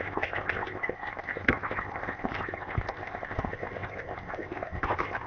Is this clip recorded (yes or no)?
no